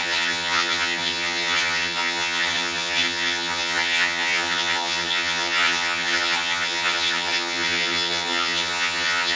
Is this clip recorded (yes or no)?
no